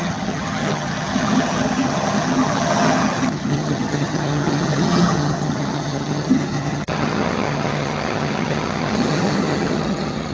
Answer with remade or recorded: remade